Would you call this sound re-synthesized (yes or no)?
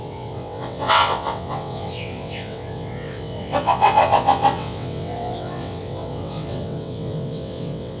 yes